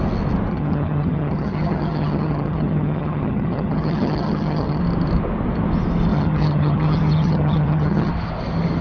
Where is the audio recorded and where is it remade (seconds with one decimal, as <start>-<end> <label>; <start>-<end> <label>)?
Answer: 0.0-0.5 recorded; 0.5-4.8 remade; 4.8-6.1 recorded; 6.1-8.1 remade; 8.1-8.8 recorded